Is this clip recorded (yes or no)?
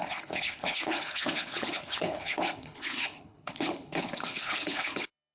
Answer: no